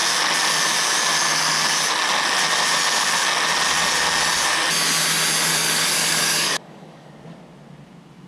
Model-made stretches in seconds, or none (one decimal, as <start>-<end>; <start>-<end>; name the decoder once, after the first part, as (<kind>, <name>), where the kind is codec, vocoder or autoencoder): 5.5-7.1 (codec, DAC)